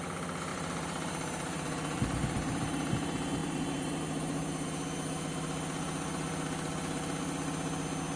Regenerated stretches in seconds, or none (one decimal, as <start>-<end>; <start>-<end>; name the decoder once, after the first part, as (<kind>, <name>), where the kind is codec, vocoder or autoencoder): 0.5-2.9 (vocoder, BigVGAN v2); 3.4-4.0